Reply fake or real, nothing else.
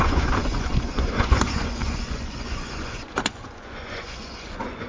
fake